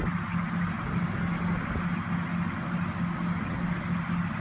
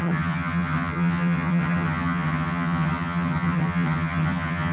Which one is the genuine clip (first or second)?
first